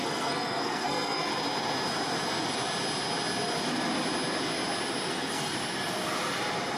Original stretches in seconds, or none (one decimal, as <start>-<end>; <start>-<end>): 1.3-5.1; 5.5-6.8